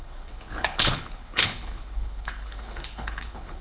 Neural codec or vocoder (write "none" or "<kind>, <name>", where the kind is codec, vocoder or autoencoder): codec, HILCodec